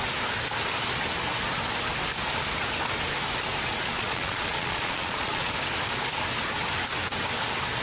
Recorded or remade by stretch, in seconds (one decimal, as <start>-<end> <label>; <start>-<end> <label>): 0.0-3.7 recorded; 3.7-5.5 remade; 5.5-7.8 recorded